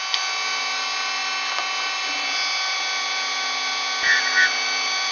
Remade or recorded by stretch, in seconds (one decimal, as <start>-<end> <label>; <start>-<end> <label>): 0.0-5.1 recorded